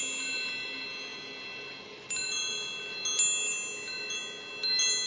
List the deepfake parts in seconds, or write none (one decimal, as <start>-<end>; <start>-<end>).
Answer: none